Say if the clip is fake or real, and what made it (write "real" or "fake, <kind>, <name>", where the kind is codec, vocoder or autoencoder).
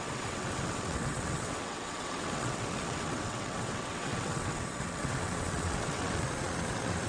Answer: fake, vocoder, WaveNeXt